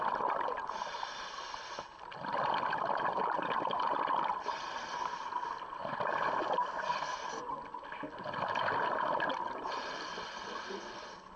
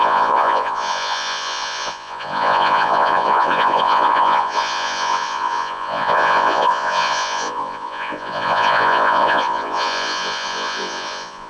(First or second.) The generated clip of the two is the second